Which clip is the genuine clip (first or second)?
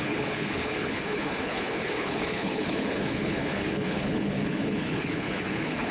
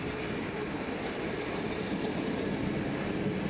second